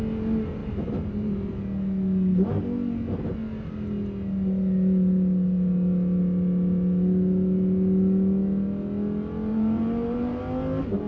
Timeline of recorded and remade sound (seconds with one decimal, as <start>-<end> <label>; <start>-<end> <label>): 0.0-0.6 recorded; 0.6-1.6 remade; 1.6-9.5 recorded; 9.5-10.4 remade; 10.4-11.1 recorded